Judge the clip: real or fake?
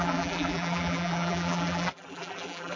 fake